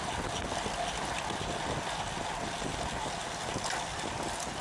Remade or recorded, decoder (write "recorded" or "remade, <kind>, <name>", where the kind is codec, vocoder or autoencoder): recorded